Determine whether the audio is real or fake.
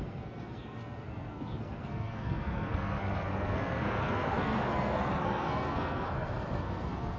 fake